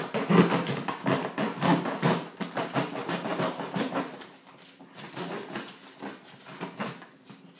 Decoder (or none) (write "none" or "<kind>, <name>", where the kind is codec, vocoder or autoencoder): none